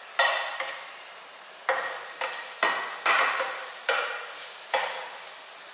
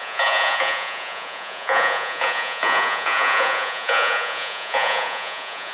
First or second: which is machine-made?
second